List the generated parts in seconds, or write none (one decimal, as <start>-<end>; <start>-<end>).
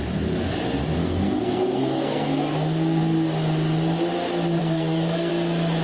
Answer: 1.0-3.0; 4.6-5.3